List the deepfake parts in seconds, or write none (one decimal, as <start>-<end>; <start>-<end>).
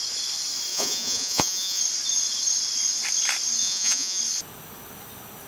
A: 0.7-1.8; 3.6-4.2